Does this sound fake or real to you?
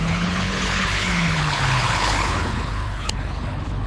fake